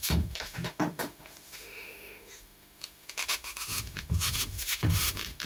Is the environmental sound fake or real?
fake